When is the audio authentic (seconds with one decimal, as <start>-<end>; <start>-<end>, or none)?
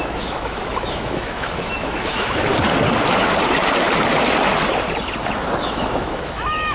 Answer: 2.5-5.6